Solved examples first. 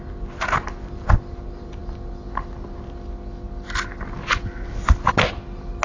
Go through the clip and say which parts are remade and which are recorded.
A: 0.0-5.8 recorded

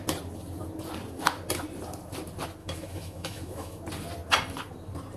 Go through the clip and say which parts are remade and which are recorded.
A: 0.0-2.6 recorded; 2.6-3.8 remade; 3.8-5.2 recorded